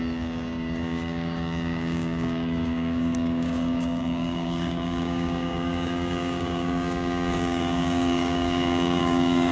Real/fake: fake